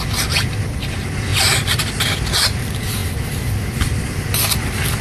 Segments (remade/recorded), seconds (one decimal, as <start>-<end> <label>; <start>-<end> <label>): 0.0-1.3 recorded; 1.3-2.3 remade; 2.3-5.0 recorded